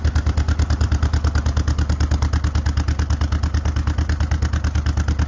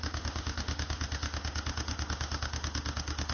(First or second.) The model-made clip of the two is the second